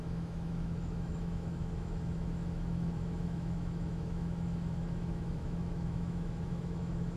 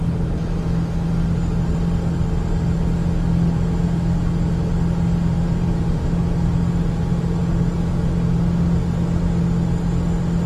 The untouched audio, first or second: second